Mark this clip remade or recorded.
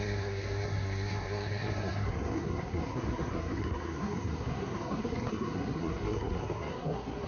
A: remade